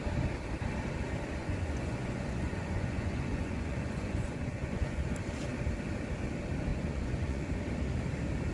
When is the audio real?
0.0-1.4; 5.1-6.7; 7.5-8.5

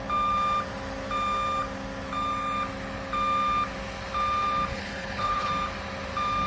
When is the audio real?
0.0-4.7; 5.5-6.5

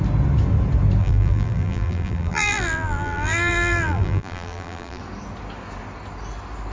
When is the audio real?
0.0-1.0; 5.0-6.7